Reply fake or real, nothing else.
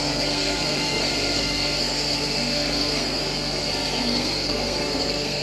fake